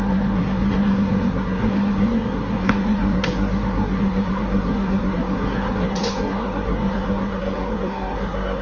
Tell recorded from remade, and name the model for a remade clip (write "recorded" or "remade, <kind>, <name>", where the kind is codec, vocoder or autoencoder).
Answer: remade, codec, SNAC